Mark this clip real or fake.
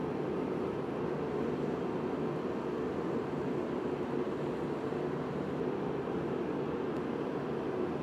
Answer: real